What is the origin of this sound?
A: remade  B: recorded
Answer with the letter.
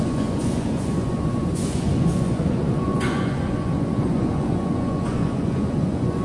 A